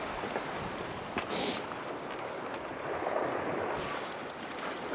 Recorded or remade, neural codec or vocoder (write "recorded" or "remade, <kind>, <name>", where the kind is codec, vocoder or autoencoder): recorded